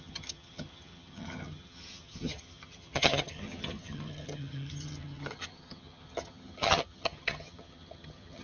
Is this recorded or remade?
remade